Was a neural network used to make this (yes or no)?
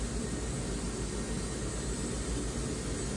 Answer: no